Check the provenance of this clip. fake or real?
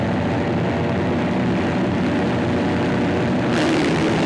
real